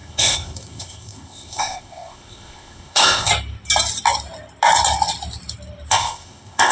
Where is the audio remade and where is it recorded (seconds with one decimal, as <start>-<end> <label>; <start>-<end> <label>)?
0.0-3.3 remade; 3.3-5.9 recorded; 5.9-6.7 remade